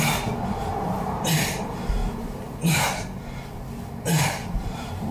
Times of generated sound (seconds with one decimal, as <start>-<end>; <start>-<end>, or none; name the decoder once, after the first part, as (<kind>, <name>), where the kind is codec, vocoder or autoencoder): 0.0-2.0 (vocoder, BigVGAN v2); 3.9-5.1